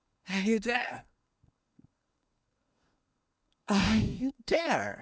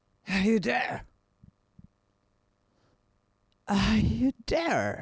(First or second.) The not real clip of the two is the first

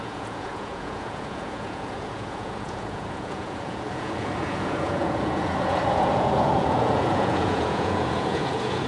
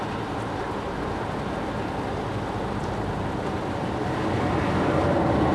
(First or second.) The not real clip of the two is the first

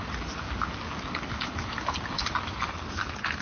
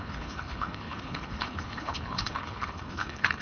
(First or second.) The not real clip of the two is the second